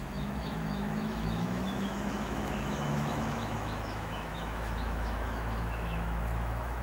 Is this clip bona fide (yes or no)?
no